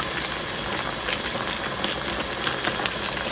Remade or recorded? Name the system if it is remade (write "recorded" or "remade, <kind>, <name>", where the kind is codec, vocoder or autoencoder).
recorded